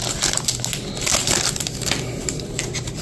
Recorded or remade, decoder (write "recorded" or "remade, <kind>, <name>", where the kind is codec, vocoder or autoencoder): recorded